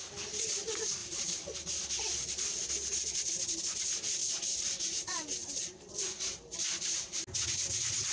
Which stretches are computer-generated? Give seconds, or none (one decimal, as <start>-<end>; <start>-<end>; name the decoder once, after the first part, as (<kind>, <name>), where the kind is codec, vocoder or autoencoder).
1.0-3.3 (vocoder, BigVGAN v2); 4.2-5.0; 5.4-7.2